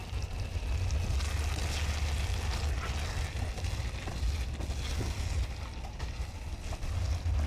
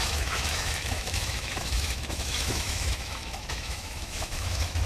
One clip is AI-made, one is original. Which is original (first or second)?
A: first